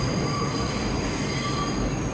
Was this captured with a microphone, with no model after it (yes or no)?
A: no